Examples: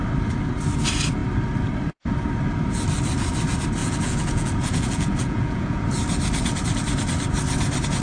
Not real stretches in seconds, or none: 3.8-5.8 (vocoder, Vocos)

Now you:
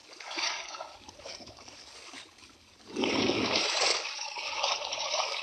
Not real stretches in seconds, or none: 0.0-5.4 (codec, DAC)

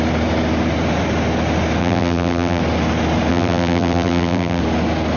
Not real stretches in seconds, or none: 1.8-2.6 (vocoder, BigVGAN v2); 3.3-4.6

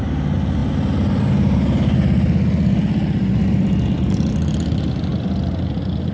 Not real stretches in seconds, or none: none

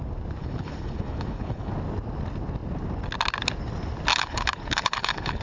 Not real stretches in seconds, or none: 0.4-1.7 (codec, HILCodec); 4.1-5.4

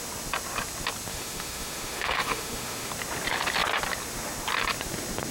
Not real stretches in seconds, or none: 1.1-2.9 (autoencoder, DAC-VAE)